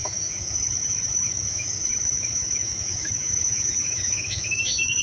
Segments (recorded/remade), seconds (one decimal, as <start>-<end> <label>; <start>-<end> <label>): 0.0-5.0 remade